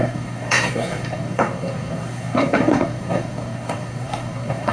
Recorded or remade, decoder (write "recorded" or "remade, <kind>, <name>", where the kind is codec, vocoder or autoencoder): remade, codec, SNAC